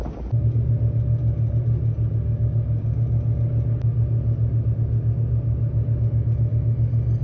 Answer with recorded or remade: recorded